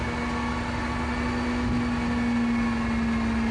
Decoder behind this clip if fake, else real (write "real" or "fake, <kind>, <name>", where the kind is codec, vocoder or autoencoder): real